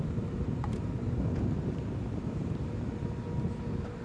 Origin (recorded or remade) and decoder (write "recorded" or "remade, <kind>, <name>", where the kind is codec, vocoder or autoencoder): remade, vocoder, BigVGAN v2